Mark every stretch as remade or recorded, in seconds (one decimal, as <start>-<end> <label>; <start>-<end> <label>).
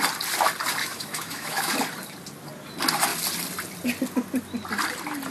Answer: 0.0-0.8 recorded; 0.8-1.7 remade; 1.7-5.3 recorded